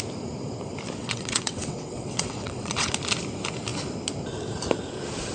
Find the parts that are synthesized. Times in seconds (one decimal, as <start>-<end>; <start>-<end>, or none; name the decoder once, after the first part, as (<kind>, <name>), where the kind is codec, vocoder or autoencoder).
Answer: 1.0-2.9 (vocoder, WaveNeXt)